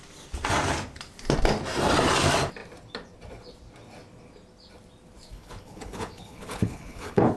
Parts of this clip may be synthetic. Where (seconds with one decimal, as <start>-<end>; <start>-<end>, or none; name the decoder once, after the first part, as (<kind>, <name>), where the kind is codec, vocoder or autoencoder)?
5.3-7.4 (codec, HILCodec)